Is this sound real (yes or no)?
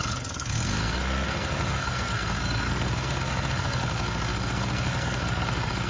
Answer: no